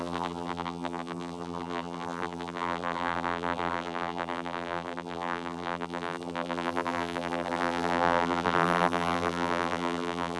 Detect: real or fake fake